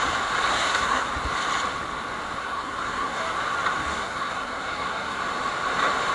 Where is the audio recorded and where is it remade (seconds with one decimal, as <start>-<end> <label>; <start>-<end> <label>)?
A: 0.0-0.5 recorded; 0.5-1.1 remade; 1.1-2.4 recorded; 2.4-3.2 remade; 3.2-3.9 recorded; 3.9-5.2 remade; 5.2-6.1 recorded